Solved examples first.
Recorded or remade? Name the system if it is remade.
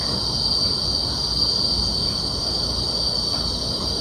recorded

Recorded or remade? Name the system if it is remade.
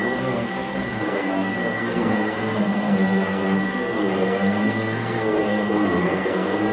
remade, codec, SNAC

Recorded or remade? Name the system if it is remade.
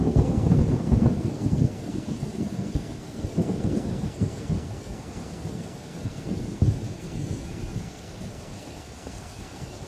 remade, codec, SNAC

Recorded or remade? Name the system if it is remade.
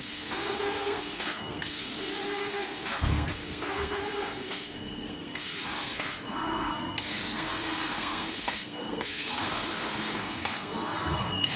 remade, codec, SNAC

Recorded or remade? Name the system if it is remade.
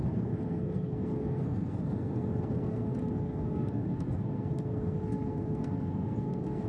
remade, codec, SNAC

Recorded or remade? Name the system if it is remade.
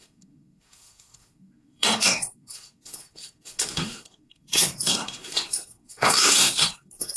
remade, codec, SNAC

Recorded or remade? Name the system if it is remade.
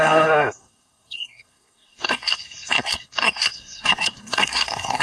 remade, codec, SNAC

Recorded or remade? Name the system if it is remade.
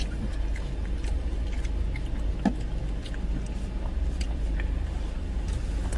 recorded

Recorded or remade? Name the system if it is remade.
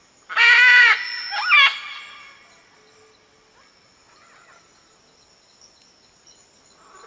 recorded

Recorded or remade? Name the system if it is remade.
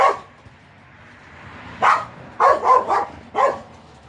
recorded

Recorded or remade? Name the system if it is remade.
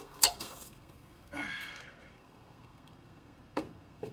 remade, codec, SNAC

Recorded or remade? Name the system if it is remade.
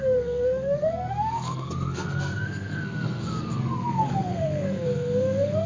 remade, codec, SNAC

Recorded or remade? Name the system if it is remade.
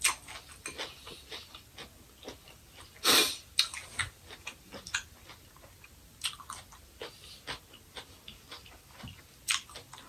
recorded